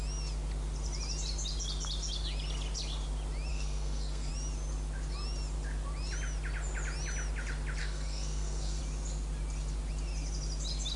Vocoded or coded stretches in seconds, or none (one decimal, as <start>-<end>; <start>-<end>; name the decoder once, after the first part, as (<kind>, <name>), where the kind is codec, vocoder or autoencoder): 3.5-4.3 (codec, SNAC); 7.8-8.8